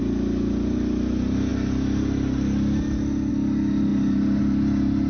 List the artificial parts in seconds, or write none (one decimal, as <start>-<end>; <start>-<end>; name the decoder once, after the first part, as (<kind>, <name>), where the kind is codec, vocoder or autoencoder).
none